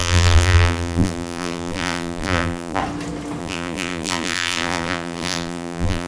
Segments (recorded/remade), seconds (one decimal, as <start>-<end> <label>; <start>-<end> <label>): 0.0-2.8 remade; 2.8-3.4 recorded; 3.4-6.1 remade